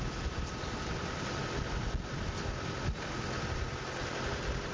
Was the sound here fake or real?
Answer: real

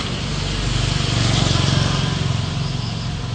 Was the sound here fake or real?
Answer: real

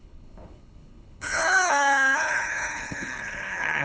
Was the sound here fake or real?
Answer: fake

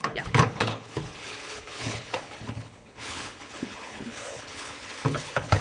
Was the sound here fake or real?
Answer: fake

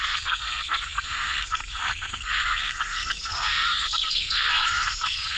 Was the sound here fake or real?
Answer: fake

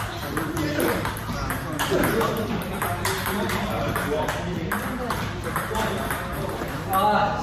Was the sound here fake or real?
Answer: real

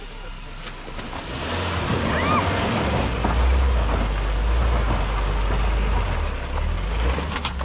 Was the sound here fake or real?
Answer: real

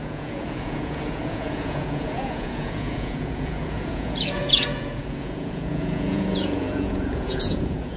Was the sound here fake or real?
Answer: fake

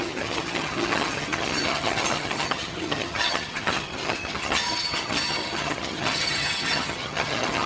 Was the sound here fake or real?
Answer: fake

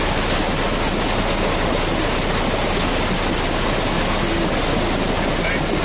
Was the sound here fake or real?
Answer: real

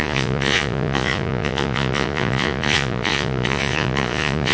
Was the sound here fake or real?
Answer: fake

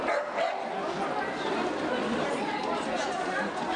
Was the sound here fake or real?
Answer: real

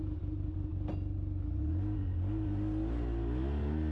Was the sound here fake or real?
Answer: real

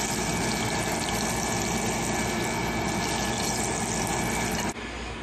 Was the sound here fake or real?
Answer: real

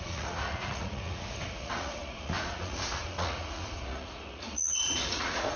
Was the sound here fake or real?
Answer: fake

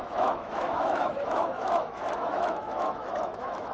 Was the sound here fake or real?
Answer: fake